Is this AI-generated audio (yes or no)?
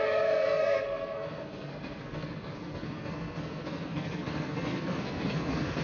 yes